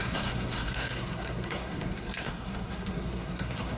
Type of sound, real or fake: fake